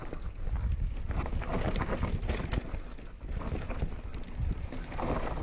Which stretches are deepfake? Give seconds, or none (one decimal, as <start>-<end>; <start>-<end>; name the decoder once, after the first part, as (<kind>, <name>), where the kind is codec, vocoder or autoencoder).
none